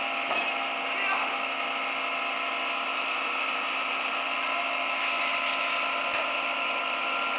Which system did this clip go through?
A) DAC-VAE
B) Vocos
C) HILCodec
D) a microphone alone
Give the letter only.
D